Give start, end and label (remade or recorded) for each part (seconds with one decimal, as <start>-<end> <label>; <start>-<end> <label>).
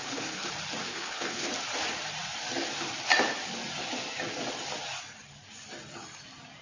0.0-0.5 remade; 0.5-0.9 recorded; 0.9-1.5 remade; 1.5-6.6 recorded